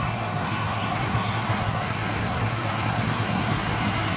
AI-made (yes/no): yes